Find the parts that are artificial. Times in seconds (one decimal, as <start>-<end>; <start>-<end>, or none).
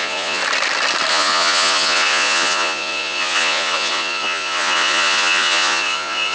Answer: 0.0-0.4; 1.1-6.3